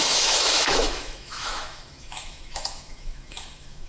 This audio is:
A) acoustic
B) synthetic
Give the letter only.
B